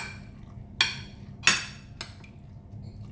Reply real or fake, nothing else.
real